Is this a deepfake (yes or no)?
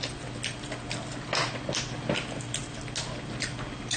no